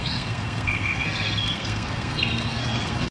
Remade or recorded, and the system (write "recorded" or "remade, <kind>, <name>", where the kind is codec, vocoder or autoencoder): remade, codec, SNAC